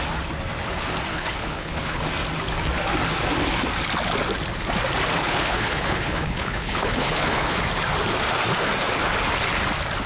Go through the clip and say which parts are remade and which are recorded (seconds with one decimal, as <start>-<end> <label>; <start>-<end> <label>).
0.0-1.1 recorded; 1.1-2.0 remade; 2.0-5.2 recorded; 5.2-7.6 remade; 7.6-10.1 recorded